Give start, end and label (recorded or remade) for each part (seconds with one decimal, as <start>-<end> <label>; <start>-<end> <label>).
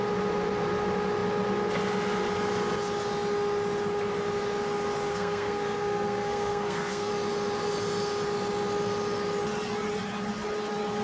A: 0.0-5.1 recorded; 5.1-7.1 remade; 7.1-11.0 recorded